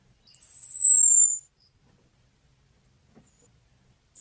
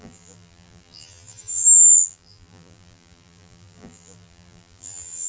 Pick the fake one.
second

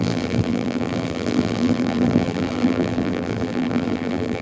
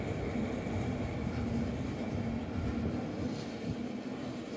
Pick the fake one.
first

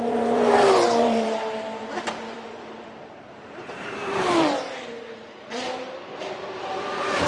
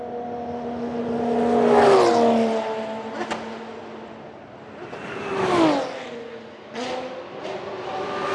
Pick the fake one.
first